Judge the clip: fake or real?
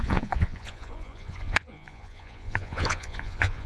fake